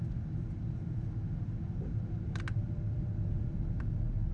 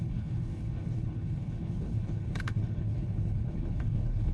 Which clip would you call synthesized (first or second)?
second